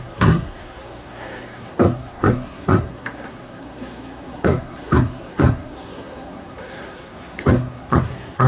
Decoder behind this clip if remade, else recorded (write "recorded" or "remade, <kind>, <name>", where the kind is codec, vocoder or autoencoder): remade, codec, SNAC